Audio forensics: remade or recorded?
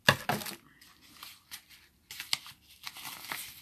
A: recorded